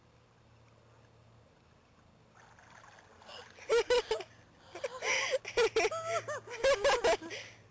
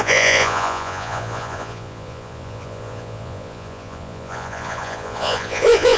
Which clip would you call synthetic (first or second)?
second